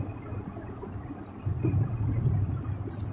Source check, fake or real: real